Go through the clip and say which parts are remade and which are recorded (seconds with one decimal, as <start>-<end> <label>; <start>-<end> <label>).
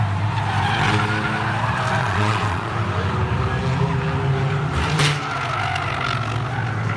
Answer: 0.0-2.0 recorded; 2.0-2.7 remade; 2.7-7.0 recorded